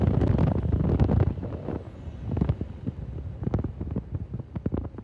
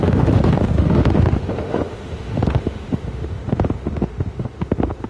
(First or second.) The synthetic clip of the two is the second